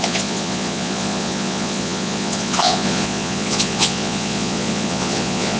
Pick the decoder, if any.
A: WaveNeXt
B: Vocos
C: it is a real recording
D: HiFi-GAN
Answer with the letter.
B